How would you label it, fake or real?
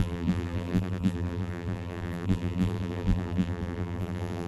fake